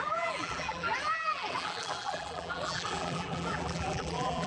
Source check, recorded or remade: remade